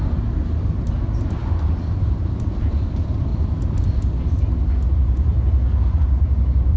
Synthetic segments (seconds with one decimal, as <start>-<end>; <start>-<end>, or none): 0.0-3.3